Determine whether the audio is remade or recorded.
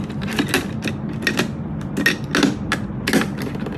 recorded